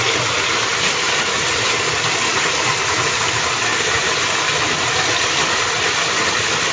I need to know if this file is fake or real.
real